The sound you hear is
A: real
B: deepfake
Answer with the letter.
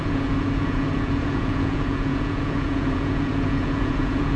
B